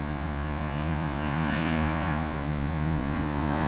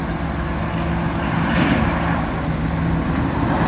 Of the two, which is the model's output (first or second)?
first